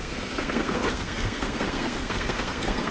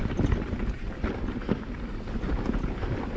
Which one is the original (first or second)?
second